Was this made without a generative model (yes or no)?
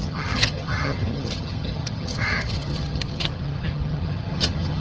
no